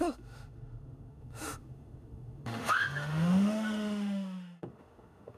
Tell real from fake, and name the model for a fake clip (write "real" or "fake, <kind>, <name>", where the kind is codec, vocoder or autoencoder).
fake, autoencoder, DAC-VAE